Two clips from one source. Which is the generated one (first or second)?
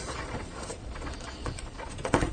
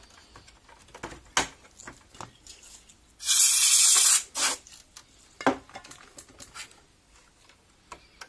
first